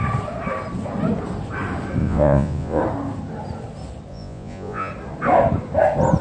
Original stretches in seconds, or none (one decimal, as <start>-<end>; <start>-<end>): 0.0-2.0; 2.8-4.1; 4.9-6.2